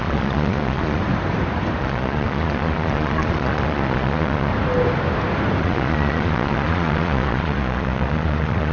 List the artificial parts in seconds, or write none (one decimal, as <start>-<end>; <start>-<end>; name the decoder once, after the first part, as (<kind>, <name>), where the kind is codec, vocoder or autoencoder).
0.0-1.0 (vocoder, Vocos); 1.8-4.5; 5.6-8.7